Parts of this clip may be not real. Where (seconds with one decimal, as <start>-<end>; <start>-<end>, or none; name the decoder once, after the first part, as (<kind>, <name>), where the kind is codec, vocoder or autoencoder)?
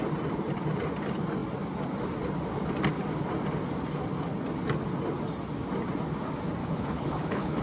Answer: 6.6-7.6 (codec, HILCodec)